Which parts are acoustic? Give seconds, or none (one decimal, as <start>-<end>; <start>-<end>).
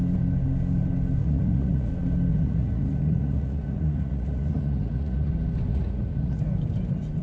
0.0-1.2; 1.9-2.3; 5.3-5.7; 6.4-7.2